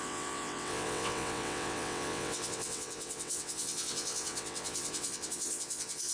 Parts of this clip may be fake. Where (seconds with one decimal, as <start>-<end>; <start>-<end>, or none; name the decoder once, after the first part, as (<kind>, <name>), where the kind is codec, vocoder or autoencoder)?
0.0-6.1 (vocoder, WaveNeXt)